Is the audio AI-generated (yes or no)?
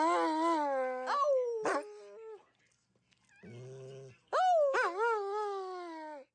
no